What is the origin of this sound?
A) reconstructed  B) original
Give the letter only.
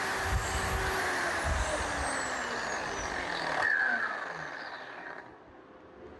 B